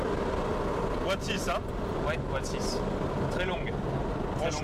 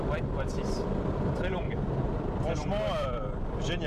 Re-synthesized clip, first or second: second